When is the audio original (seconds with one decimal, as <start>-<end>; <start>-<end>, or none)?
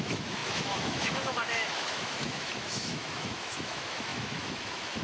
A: none